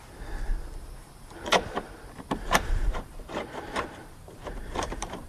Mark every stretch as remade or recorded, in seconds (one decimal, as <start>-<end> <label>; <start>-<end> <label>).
0.0-0.5 recorded; 0.5-3.4 remade; 3.4-4.0 recorded; 4.0-5.3 remade